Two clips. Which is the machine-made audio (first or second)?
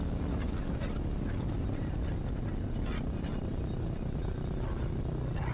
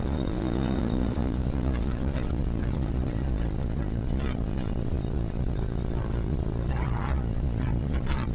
second